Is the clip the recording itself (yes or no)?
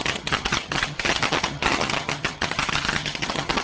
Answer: no